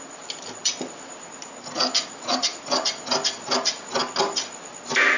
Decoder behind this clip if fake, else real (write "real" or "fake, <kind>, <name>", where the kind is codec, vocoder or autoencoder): real